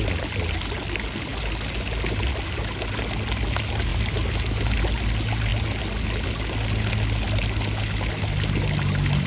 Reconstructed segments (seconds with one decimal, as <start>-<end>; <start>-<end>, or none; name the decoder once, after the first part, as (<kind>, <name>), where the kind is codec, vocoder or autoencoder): none